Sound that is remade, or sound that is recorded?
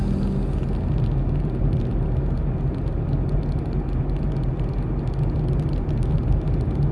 recorded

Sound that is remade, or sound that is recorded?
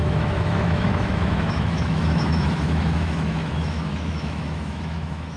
remade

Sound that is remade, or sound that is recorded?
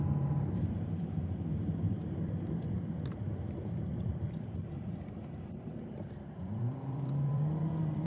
remade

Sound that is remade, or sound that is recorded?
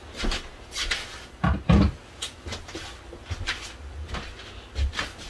recorded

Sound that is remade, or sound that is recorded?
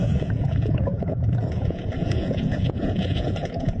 remade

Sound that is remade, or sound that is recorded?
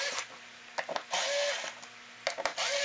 recorded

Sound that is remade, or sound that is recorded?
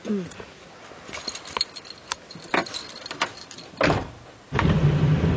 recorded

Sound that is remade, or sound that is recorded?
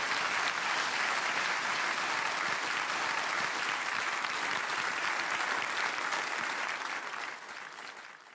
recorded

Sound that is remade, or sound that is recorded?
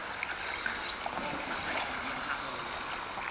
recorded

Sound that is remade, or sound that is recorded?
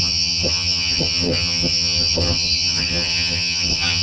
remade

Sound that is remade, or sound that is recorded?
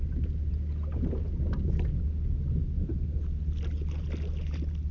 recorded